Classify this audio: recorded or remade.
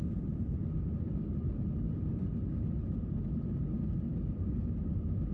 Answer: recorded